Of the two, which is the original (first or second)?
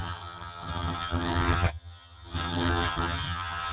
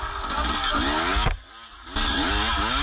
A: second